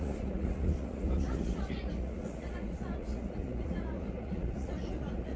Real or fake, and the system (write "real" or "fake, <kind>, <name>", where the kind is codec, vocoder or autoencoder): fake, vocoder, Vocos